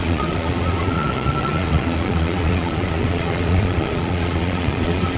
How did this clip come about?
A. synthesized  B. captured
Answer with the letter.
A